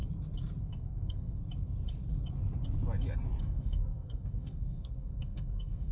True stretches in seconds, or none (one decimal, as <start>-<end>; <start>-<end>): 0.0-0.6; 1.4-3.4